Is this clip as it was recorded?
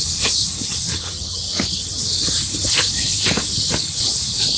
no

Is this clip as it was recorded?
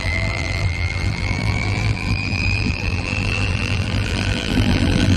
no